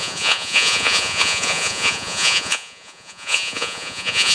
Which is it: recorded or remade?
remade